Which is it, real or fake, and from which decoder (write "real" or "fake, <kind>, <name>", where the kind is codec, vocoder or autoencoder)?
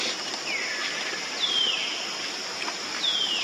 real